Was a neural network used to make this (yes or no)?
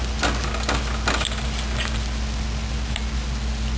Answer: no